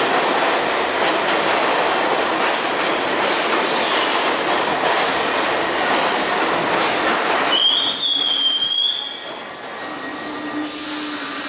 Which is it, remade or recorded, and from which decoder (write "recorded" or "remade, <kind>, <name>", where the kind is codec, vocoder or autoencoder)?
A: recorded